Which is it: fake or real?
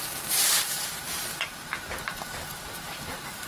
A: fake